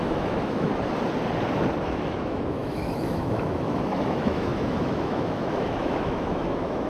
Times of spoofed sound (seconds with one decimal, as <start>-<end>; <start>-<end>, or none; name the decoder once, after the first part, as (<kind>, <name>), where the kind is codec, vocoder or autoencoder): 0.0-0.7 (autoencoder, DAC-VAE); 1.8-6.9